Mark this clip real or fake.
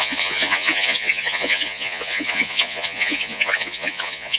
fake